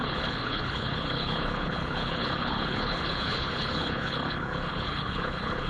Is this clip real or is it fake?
fake